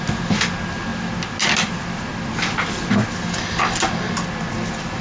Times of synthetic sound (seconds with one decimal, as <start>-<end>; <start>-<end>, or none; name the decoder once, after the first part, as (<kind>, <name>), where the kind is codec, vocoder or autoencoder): none